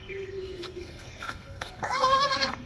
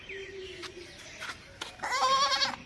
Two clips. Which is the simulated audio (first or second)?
first